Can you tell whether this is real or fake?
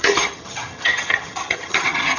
fake